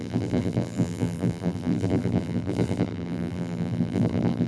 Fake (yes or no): yes